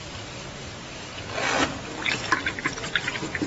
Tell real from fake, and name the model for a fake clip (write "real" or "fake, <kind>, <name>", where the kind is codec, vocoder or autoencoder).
real